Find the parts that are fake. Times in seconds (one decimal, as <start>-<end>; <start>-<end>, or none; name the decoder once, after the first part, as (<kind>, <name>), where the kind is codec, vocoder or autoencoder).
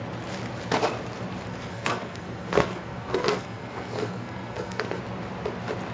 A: 1.5-5.0 (codec, SNAC)